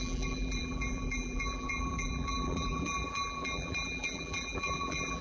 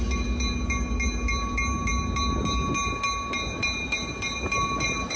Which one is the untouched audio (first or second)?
second